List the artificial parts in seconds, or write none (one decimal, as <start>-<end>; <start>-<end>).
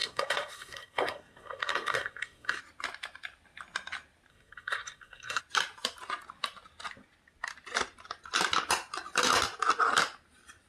0.0-2.6; 4.3-5.4